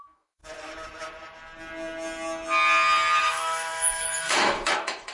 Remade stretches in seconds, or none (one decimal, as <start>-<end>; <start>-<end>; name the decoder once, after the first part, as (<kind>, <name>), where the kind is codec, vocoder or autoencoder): 0.0-0.4 (autoencoder, DAC-VAE); 3.2-5.1